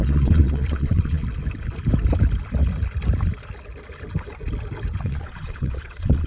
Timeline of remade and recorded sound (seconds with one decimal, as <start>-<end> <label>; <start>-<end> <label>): 0.0-1.2 remade; 1.2-5.0 recorded; 5.0-6.3 remade